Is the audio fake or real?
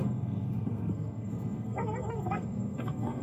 fake